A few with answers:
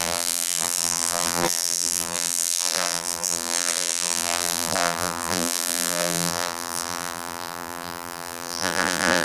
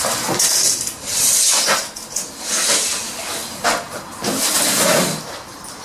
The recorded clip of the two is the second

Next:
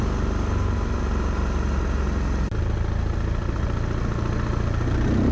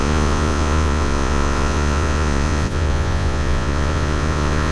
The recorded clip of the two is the first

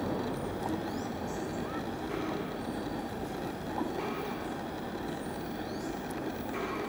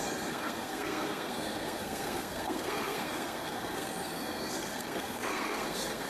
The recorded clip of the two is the first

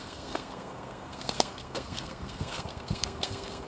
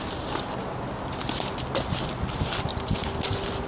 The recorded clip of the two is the second